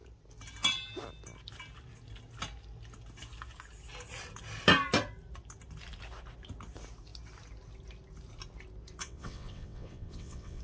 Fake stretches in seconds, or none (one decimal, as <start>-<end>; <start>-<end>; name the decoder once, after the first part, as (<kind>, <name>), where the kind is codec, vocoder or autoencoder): 9.0-10.6 (vocoder, WaveNeXt)